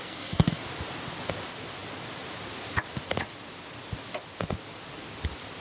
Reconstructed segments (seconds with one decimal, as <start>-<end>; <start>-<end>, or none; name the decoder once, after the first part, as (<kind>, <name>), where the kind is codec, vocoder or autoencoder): 0.0-0.6 (codec, SNAC)